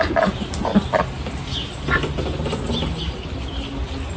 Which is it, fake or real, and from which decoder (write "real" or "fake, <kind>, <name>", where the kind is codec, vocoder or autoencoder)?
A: real